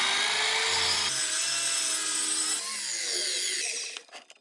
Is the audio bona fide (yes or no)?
yes